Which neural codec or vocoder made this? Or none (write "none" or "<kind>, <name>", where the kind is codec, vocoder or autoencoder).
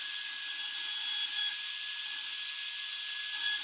none